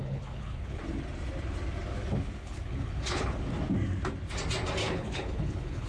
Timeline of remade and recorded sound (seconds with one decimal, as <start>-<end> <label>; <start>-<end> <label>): 0.0-0.8 remade; 0.8-2.4 recorded; 2.4-3.4 remade; 3.4-4.8 recorded; 4.8-5.9 remade